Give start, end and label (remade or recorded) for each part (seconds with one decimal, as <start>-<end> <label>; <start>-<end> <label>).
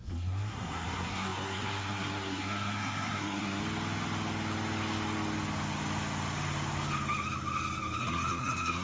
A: 0.0-3.6 remade; 3.6-8.0 recorded; 8.0-8.8 remade